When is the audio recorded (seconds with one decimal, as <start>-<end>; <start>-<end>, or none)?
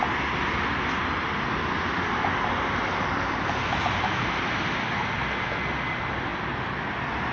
0.0-7.3